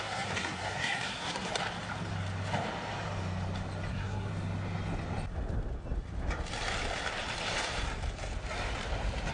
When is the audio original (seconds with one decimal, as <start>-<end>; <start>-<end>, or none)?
1.5-3.9; 4.3-9.3